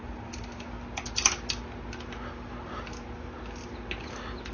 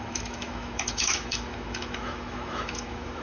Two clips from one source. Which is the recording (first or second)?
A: first